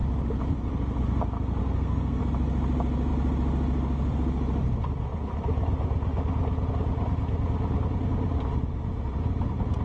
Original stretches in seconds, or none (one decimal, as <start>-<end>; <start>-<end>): 0.0-1.6; 2.2-9.8